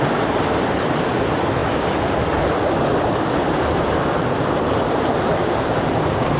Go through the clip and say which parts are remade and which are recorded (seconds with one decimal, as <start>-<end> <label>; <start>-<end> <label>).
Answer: 0.0-1.6 remade; 1.6-4.1 recorded; 4.1-6.4 remade